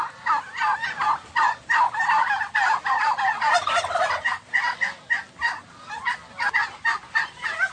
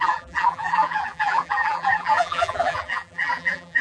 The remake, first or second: second